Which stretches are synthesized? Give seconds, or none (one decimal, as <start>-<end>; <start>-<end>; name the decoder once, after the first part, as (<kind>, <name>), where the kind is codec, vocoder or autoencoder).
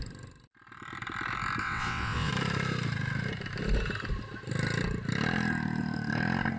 1.6-2.3 (vocoder, WaveNeXt)